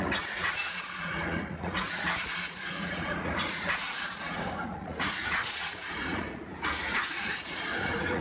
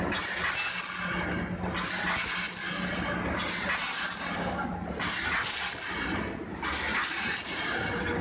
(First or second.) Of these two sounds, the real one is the second